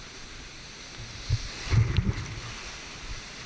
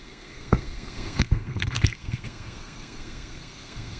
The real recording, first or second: first